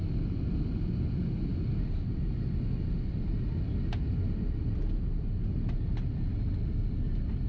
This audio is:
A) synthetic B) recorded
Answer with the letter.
B